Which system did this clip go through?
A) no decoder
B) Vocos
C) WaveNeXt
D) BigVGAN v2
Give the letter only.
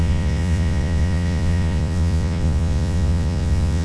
B